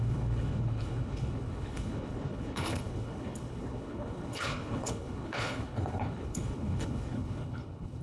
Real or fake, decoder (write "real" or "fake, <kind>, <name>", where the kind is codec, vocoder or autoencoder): fake, codec, HILCodec